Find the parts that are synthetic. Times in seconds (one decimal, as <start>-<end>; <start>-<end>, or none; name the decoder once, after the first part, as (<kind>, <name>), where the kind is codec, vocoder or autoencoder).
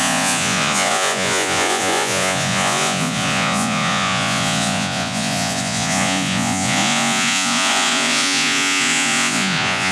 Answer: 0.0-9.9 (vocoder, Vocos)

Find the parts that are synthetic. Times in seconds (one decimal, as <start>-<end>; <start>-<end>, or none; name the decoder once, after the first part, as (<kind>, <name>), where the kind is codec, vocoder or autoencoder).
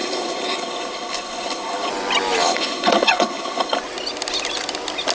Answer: 0.0-1.9 (codec, HILCodec); 2.4-3.8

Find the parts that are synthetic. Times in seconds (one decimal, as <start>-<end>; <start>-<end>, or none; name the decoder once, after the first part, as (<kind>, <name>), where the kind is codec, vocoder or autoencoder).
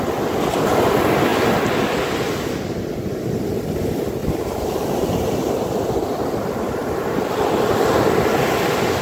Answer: 4.2-5.5 (vocoder, BigVGAN v2); 6.8-7.4